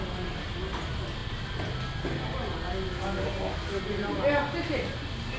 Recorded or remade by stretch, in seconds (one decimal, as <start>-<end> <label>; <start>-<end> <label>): 0.0-5.4 recorded